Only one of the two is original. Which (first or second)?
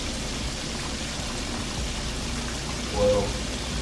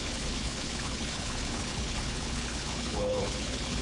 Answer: first